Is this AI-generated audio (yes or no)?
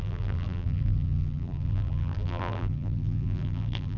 yes